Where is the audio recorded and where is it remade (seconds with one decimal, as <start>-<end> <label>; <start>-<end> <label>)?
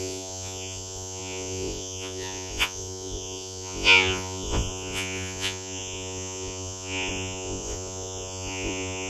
0.0-9.1 remade